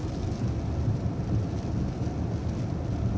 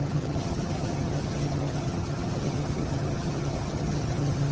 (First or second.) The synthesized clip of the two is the second